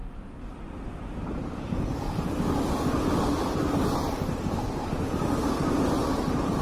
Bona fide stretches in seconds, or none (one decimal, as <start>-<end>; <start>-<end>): 0.0-3.4; 4.0-6.6